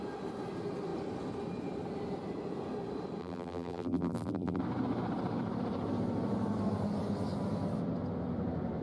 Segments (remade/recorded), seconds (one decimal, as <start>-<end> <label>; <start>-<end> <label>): 0.0-3.2 recorded; 3.2-4.6 remade; 4.6-8.8 recorded